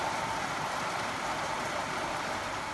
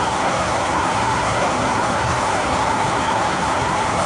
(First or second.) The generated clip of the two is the second